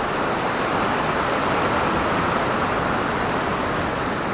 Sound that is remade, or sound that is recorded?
recorded